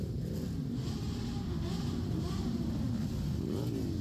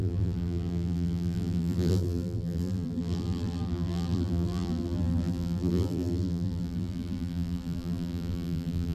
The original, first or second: first